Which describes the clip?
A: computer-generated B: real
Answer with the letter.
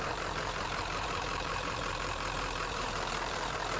A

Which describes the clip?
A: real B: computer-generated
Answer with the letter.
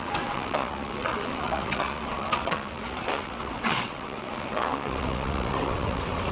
B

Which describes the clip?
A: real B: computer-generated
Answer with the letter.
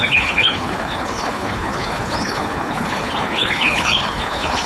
B